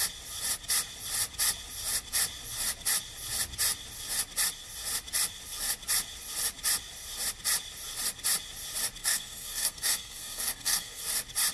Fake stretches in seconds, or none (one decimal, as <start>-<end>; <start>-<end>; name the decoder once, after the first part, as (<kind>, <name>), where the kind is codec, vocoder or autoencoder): 9.0-11.0 (codec, SNAC)